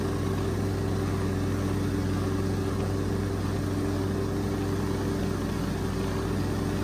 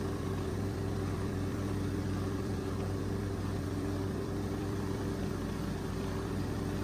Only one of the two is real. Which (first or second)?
first